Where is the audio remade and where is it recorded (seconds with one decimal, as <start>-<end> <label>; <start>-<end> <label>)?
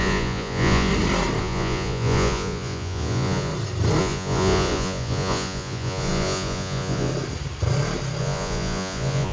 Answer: 0.0-0.9 remade; 0.9-1.4 recorded; 1.4-3.5 remade; 3.5-4.0 recorded; 4.0-7.1 remade; 7.1-8.2 recorded; 8.2-9.3 remade